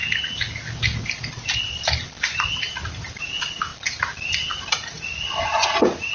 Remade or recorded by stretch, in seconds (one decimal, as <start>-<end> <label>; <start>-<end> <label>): 0.0-3.2 recorded; 3.2-3.7 remade; 3.7-4.7 recorded; 4.7-6.1 remade